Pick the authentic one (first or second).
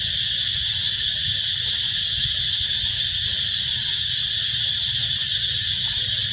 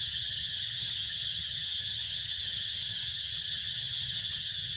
first